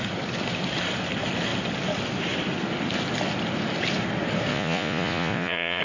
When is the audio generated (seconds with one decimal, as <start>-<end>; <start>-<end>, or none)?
4.5-5.8